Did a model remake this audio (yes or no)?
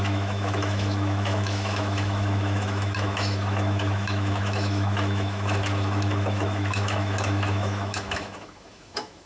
yes